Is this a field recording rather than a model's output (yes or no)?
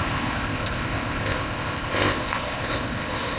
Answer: no